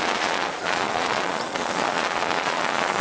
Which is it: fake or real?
fake